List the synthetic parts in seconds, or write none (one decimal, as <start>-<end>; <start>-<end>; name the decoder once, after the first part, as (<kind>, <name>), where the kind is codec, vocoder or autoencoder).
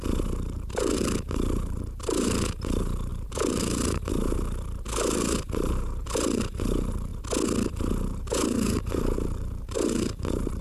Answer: 0.0-7.1 (vocoder, BigVGAN v2); 7.7-10.6